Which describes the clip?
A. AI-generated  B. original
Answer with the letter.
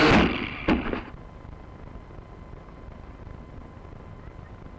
B